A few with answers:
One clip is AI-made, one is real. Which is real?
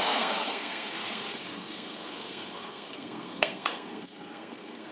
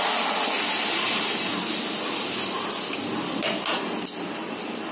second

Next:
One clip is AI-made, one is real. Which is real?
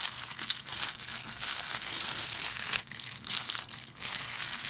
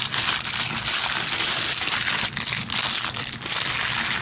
second